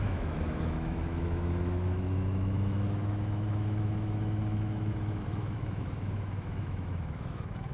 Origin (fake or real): fake